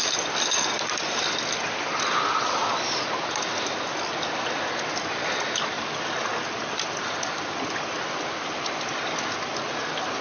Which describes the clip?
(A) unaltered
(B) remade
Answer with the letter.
A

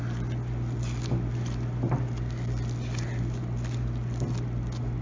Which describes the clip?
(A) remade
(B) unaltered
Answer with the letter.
B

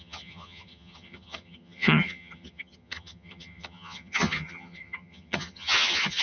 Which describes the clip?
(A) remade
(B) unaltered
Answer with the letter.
A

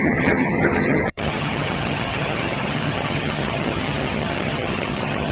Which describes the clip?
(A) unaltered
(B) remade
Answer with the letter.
B